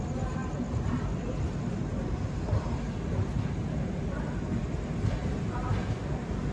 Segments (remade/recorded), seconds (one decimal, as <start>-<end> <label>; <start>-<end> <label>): 0.0-6.5 recorded